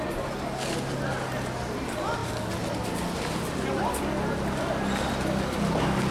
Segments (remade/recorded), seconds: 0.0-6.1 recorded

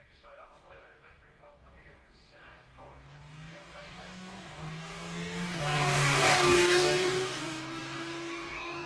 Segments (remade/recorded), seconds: 0.0-8.9 remade

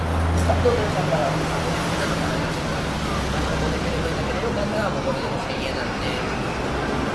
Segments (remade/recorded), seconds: 0.0-7.1 recorded

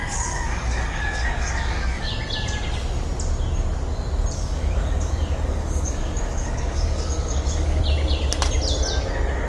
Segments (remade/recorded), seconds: 0.0-2.1 remade; 2.1-4.3 recorded; 4.3-7.8 remade; 7.8-9.5 recorded

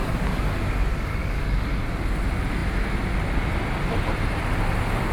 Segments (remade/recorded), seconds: 0.0-0.5 remade; 0.5-0.9 recorded; 0.9-1.7 remade; 1.7-5.1 recorded

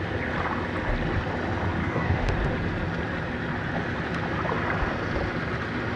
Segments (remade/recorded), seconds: 0.0-1.8 recorded; 1.8-2.3 remade; 2.3-6.0 recorded

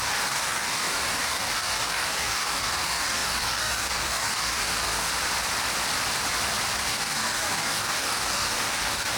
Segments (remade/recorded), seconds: 0.0-5.1 remade; 5.1-6.8 recorded; 6.8-9.2 remade

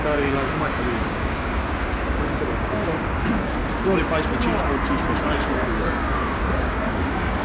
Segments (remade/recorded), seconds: 0.0-3.6 remade; 3.6-5.2 recorded; 5.2-7.4 remade